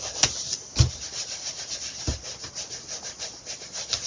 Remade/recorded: recorded